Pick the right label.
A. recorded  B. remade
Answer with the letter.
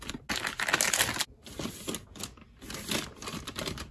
A